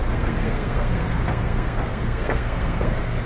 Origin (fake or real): fake